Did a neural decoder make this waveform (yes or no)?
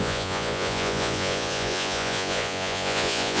yes